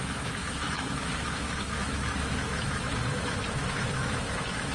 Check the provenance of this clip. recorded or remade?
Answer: remade